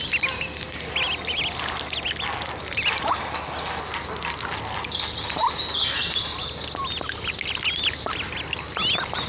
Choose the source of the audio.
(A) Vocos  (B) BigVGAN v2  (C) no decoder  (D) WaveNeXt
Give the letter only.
C